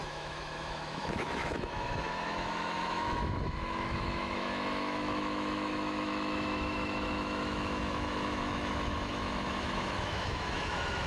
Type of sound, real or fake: fake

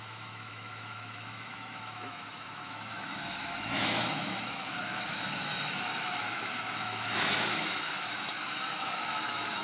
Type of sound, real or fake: fake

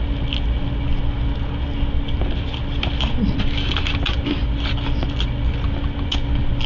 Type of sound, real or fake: real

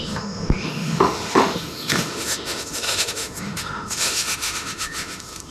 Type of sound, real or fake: fake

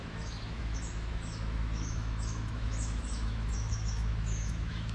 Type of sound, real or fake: fake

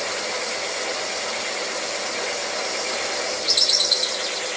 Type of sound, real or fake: real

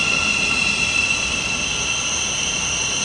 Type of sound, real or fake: real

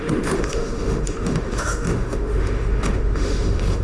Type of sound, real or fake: fake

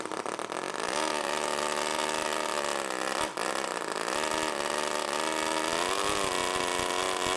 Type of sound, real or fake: real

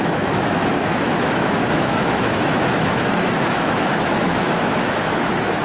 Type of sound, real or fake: fake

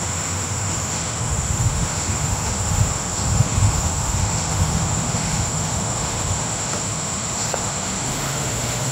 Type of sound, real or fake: fake